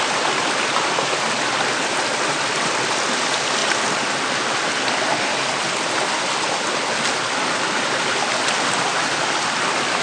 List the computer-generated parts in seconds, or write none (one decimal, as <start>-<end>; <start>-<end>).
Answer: none